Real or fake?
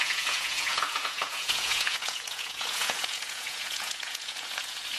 fake